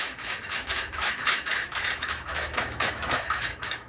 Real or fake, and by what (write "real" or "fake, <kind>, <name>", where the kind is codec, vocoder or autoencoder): fake, autoencoder, DAC-VAE